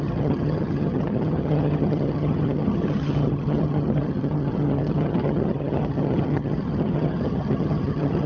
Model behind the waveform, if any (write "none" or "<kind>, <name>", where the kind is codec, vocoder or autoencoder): vocoder, HiFi-GAN